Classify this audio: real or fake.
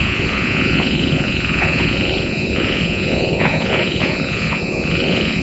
fake